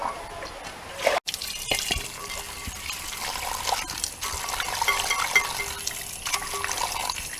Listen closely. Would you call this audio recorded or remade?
recorded